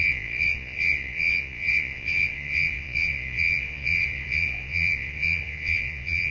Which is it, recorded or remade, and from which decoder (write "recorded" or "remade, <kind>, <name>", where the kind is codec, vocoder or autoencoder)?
remade, vocoder, Vocos